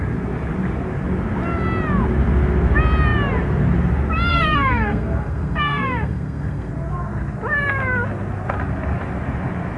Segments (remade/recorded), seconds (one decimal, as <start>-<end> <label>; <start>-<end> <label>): 0.0-4.3 recorded; 4.3-6.7 remade; 6.7-9.8 recorded